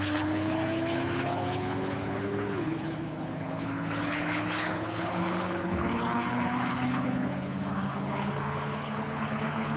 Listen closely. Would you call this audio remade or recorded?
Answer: remade